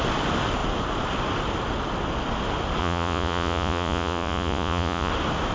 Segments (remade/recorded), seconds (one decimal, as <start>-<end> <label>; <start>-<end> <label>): 0.0-2.8 recorded; 2.8-5.1 remade; 5.1-5.5 recorded